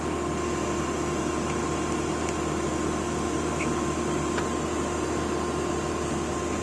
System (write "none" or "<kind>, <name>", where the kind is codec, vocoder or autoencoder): none